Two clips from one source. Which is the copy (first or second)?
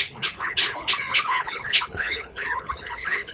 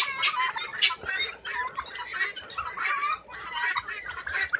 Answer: first